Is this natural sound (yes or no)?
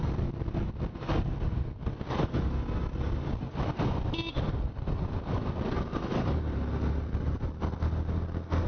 yes